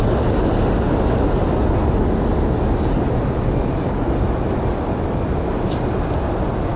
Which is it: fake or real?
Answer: real